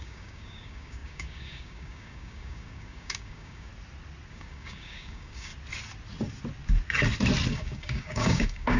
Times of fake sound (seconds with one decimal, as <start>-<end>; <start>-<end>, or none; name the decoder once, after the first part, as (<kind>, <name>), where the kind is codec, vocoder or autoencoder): 0.0-3.7 (codec, DAC); 4.3-5.5; 7.5-8.8